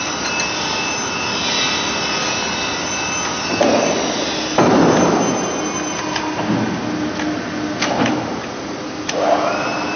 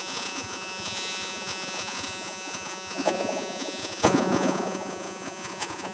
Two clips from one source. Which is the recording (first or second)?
first